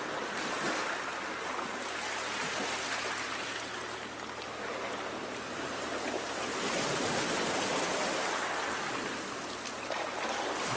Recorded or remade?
recorded